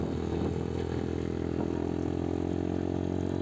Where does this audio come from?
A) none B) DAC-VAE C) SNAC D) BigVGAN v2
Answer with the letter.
A